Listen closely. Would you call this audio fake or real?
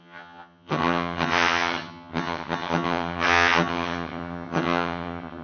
fake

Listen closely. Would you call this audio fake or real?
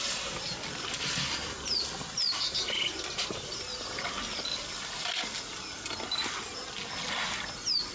real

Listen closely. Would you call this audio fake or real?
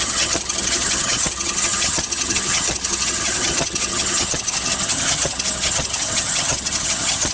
fake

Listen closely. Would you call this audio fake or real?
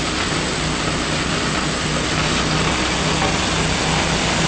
real